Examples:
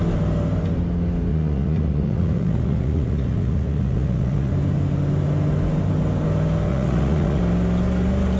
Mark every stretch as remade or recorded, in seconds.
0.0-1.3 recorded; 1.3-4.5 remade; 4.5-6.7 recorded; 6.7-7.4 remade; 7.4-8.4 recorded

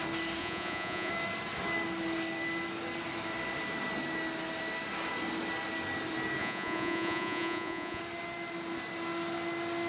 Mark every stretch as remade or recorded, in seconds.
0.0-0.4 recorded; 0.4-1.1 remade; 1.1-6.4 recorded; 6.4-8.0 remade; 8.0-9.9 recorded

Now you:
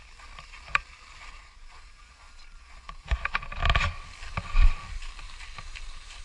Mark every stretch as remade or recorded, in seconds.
0.0-1.4 recorded; 1.4-3.2 remade; 3.2-6.2 recorded

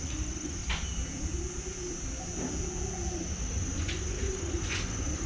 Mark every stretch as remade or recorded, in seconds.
0.0-0.6 remade; 0.6-3.8 recorded; 3.8-5.3 remade